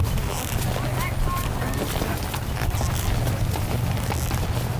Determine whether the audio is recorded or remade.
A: recorded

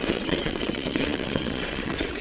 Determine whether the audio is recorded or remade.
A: remade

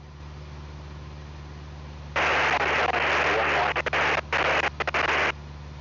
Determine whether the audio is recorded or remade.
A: recorded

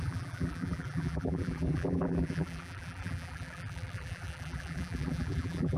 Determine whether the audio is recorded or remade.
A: remade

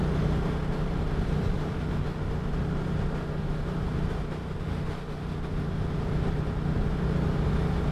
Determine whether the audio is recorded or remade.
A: recorded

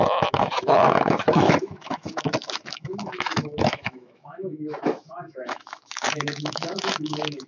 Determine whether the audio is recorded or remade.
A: remade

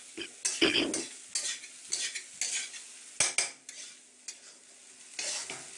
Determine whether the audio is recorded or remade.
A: recorded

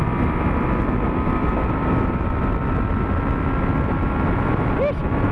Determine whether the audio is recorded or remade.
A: recorded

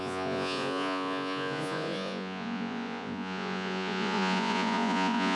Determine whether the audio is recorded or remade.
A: remade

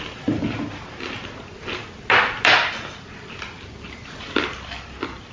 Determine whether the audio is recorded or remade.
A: recorded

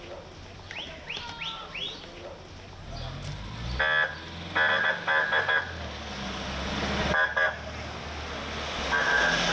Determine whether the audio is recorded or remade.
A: recorded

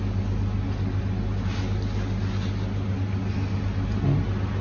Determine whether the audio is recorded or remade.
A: recorded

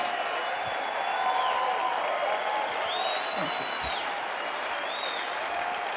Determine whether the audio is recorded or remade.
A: recorded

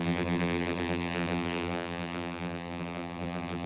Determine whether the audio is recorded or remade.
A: remade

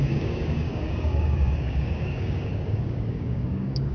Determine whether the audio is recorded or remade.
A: remade